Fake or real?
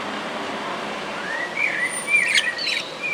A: fake